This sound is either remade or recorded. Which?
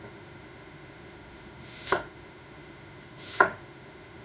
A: remade